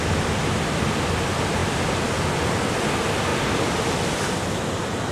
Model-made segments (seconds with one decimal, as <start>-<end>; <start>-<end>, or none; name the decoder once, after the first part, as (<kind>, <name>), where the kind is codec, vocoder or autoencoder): 3.3-4.4 (vocoder, BigVGAN v2)